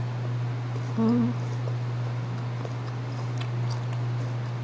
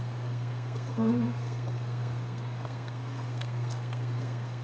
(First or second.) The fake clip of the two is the second